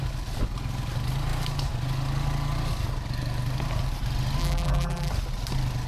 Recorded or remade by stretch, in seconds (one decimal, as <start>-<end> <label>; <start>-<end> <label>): 0.0-4.4 recorded; 4.4-5.1 remade; 5.1-5.9 recorded